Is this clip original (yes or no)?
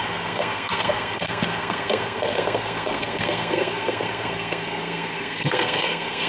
no